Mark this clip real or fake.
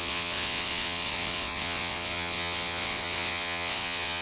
fake